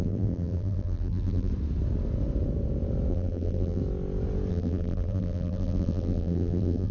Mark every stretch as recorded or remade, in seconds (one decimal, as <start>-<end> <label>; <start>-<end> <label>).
0.0-1.5 remade; 1.5-3.1 recorded; 3.1-3.8 remade; 3.8-4.5 recorded; 4.5-6.9 remade

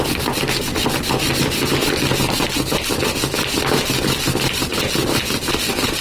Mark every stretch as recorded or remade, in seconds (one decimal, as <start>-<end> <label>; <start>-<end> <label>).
0.0-6.0 recorded